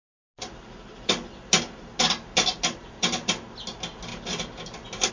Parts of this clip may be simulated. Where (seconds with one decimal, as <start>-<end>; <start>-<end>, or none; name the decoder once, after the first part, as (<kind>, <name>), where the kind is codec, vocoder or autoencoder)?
none